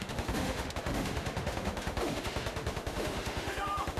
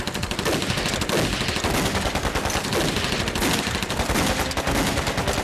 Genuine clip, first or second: second